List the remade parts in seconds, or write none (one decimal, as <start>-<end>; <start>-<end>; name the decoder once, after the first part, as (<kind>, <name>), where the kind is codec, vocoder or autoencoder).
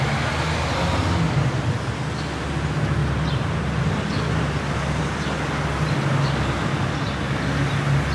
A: none